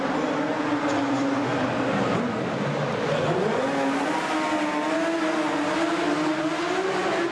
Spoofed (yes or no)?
no